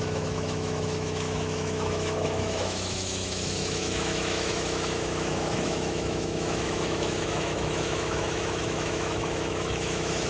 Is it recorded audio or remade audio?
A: remade